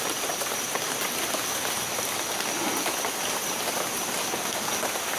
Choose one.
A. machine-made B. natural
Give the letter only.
B